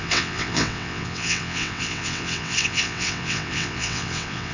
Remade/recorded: remade